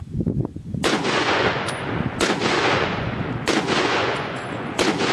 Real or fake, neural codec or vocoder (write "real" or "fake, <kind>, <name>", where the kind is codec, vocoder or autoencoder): fake, vocoder, Vocos